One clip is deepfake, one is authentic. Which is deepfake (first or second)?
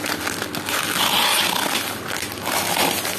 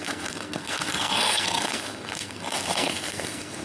second